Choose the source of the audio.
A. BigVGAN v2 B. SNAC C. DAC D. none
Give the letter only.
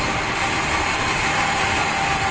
D